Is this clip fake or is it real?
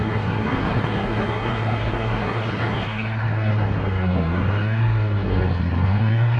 fake